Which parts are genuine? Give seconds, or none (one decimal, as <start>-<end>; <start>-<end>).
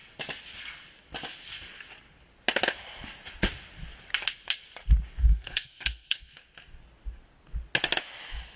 0.0-5.2; 6.3-8.6